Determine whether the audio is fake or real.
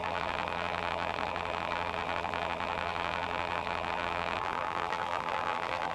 fake